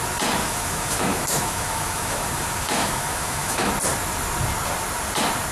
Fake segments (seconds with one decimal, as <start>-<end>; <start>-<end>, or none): 0.4-3.7